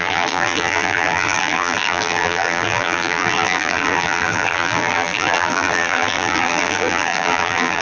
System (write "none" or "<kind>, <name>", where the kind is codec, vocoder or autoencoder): vocoder, BigVGAN v2